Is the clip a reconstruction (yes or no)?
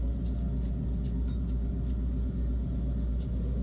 no